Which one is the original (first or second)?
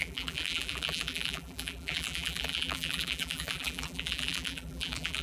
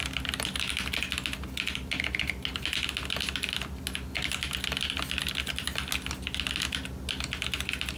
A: second